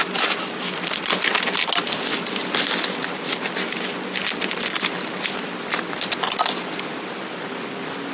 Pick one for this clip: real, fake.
real